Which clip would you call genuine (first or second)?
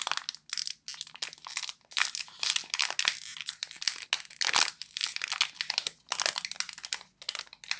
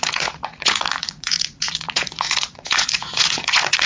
first